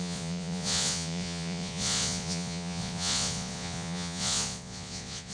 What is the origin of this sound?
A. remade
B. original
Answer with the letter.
A